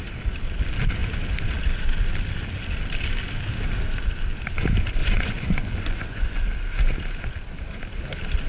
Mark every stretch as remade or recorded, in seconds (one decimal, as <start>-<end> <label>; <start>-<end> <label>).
0.0-5.0 recorded; 5.0-6.4 remade; 6.4-8.5 recorded